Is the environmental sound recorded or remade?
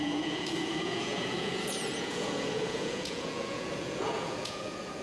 remade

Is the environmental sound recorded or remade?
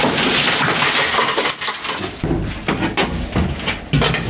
recorded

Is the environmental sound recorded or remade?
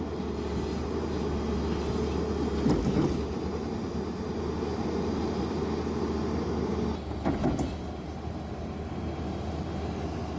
recorded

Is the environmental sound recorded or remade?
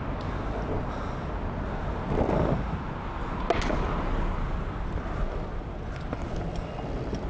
recorded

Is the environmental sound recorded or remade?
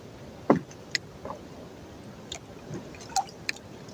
recorded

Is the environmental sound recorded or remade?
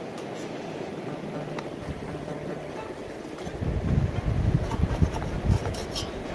recorded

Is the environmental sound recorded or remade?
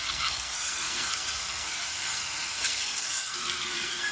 remade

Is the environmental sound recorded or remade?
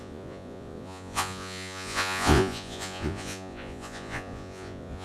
remade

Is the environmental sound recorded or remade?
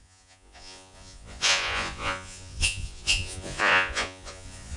remade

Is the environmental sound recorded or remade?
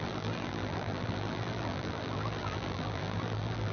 remade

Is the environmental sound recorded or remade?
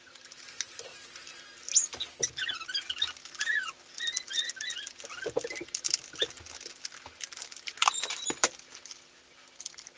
recorded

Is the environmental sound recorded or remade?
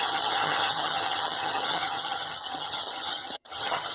remade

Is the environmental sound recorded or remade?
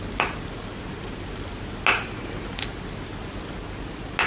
recorded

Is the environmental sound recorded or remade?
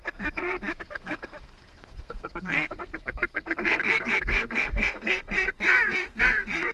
remade